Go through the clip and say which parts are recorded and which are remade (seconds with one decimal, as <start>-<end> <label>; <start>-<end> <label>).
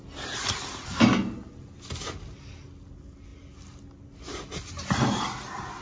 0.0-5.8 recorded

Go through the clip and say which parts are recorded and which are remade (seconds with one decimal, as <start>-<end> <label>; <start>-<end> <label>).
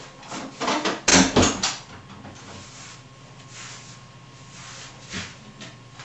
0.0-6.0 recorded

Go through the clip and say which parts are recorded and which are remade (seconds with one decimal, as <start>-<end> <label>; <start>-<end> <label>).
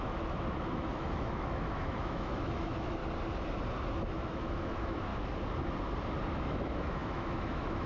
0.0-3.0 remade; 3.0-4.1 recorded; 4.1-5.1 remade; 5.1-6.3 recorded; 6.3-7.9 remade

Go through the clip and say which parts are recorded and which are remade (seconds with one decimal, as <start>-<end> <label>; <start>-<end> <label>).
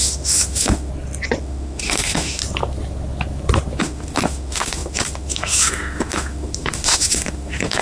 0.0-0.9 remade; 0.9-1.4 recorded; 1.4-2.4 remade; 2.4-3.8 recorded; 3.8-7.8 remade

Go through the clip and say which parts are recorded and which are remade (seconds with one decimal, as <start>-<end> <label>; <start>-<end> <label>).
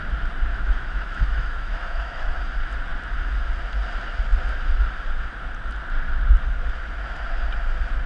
0.0-0.5 recorded; 0.5-2.4 remade; 2.4-8.1 recorded